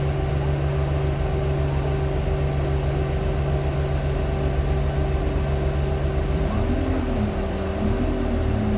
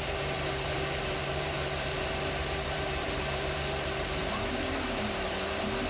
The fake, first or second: second